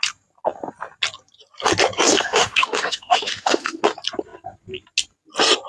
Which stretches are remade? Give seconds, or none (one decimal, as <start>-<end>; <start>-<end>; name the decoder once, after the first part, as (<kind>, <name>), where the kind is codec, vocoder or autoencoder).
2.1-3.8 (autoencoder, DAC-VAE)